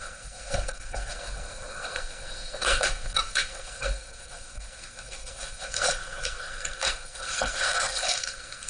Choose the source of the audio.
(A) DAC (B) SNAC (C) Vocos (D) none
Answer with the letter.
B